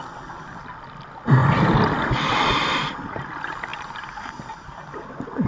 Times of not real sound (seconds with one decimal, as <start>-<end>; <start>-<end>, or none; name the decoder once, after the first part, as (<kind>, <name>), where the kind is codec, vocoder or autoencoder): none